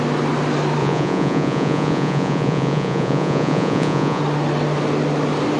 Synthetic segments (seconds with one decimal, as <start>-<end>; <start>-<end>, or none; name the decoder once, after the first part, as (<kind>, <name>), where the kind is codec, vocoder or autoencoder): 0.8-4.2 (vocoder, Vocos)